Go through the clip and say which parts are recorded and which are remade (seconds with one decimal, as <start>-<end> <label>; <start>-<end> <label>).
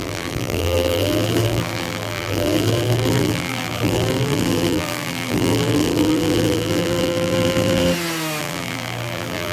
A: 0.0-7.8 remade; 7.8-8.4 recorded; 8.4-9.5 remade